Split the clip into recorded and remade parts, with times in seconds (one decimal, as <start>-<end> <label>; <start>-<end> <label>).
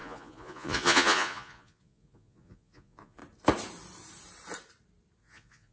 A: 0.0-3.2 remade; 3.2-5.2 recorded; 5.2-5.7 remade